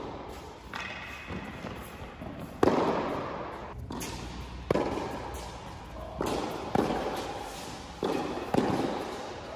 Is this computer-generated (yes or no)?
no